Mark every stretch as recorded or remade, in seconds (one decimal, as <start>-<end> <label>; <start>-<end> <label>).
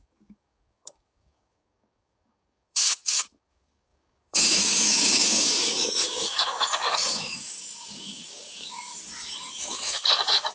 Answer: 0.0-8.9 remade; 8.9-9.5 recorded; 9.5-10.5 remade